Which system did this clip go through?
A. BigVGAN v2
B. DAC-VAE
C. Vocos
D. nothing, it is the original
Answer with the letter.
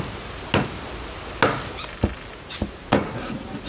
D